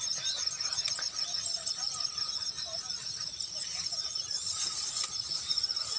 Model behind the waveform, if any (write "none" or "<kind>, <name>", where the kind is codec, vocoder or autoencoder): vocoder, Vocos